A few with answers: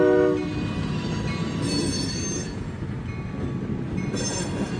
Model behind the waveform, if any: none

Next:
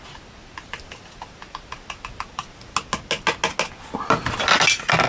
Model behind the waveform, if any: none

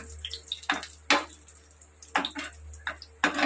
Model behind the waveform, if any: none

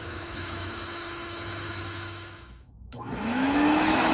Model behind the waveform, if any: autoencoder, DAC-VAE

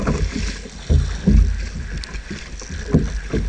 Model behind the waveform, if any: none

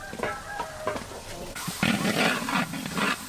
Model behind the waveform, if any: none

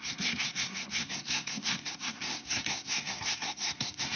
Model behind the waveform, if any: codec, SNAC